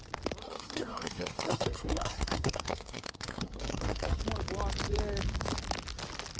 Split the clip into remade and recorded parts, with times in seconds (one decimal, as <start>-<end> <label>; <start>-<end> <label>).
0.0-0.4 recorded; 0.4-4.2 remade; 4.2-6.4 recorded